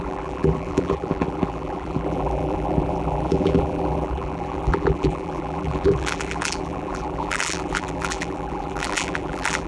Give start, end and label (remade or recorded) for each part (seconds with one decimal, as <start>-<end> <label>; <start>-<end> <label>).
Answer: 0.0-9.7 remade